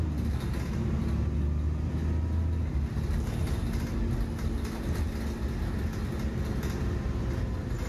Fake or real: real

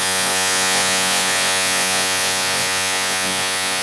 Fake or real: fake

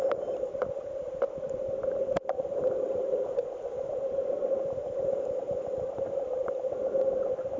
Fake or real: real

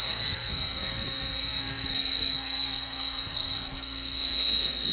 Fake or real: fake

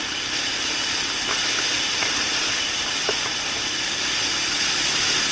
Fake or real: real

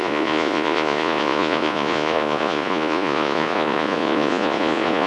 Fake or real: fake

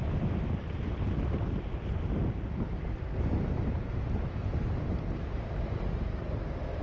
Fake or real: real